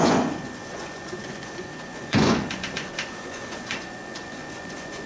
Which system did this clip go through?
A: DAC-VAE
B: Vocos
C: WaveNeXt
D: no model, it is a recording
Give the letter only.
B